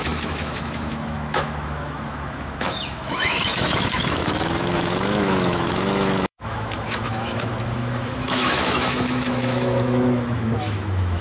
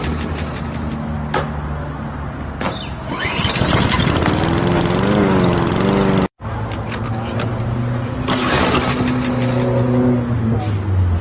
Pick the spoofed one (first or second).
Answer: first